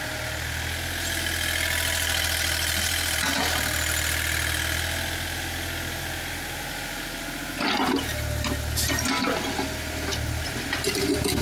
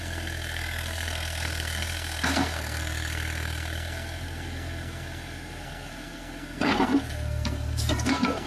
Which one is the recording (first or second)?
first